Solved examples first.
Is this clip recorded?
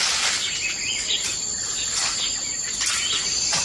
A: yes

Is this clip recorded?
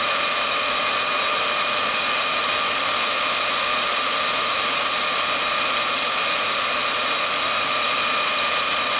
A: yes